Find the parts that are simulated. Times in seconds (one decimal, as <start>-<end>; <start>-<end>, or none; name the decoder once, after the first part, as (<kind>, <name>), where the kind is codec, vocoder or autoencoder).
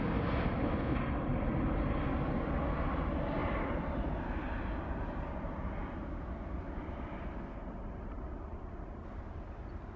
3.4-4.0 (vocoder, BigVGAN v2)